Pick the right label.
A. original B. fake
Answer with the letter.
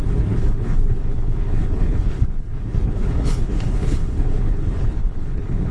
B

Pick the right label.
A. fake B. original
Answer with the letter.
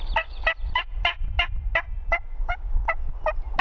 B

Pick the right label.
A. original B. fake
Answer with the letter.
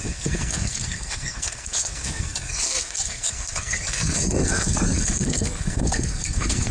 B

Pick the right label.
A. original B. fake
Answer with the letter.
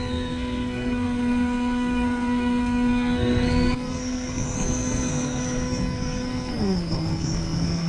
B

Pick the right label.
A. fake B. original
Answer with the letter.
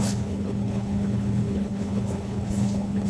A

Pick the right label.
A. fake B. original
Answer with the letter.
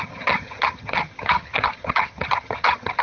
A